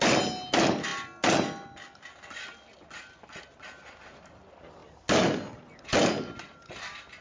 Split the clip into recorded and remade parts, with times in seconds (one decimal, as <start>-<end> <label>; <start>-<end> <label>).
0.0-7.2 recorded